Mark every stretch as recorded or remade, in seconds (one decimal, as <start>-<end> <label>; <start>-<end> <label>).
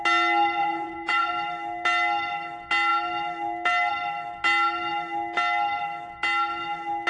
0.0-0.6 recorded; 0.6-1.3 remade; 1.3-7.1 recorded